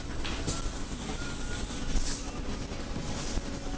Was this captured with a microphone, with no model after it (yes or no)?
yes